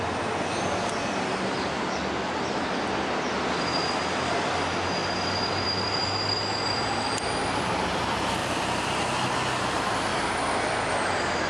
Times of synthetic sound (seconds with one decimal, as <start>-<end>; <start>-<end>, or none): 5.0-7.6; 8.4-9.3